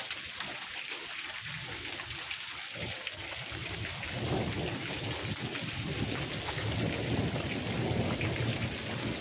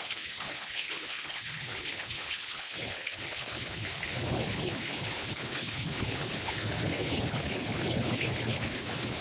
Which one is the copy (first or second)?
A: second